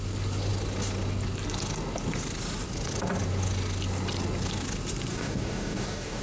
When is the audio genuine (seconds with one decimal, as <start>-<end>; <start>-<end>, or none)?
0.0-5.1